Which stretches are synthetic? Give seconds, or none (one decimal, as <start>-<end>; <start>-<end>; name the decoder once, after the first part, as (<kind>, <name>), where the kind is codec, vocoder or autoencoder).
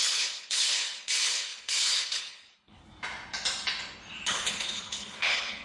0.0-2.8 (codec, HILCodec); 4.3-5.6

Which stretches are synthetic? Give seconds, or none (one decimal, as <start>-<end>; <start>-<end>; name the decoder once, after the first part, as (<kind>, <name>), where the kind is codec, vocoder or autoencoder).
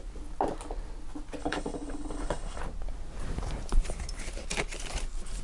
1.4-2.6 (codec, HILCodec)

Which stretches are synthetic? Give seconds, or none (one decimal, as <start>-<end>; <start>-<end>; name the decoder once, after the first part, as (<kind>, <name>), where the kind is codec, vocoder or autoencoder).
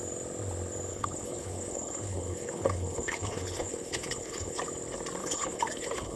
0.9-4.6 (codec, HILCodec); 5.2-6.2